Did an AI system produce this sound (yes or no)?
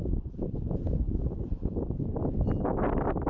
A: no